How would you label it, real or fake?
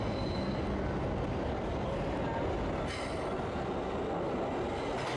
real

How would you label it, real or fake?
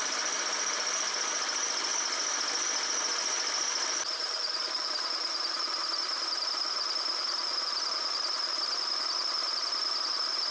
real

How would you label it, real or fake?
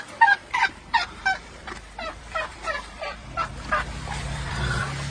fake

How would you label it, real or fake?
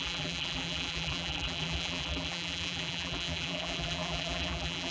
fake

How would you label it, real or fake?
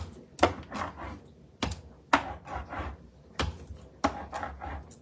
real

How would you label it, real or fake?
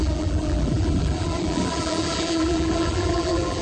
fake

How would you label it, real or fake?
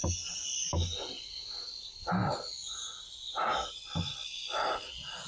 real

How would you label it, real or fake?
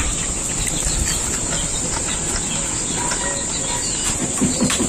real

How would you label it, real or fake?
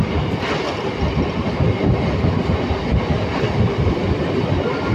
real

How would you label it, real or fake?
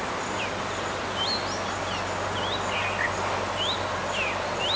real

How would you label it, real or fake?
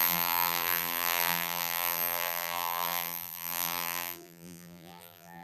fake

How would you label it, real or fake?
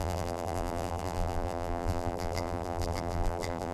fake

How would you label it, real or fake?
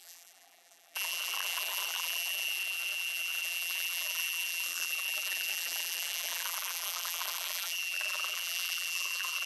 fake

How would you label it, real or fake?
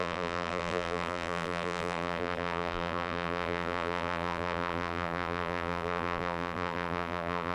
fake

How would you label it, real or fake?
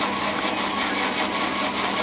real